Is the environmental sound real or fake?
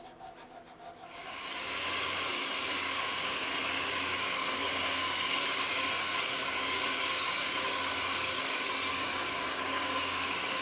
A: fake